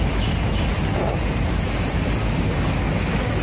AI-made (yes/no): no